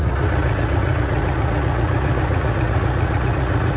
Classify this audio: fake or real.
fake